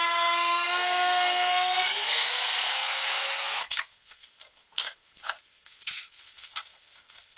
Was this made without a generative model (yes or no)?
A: no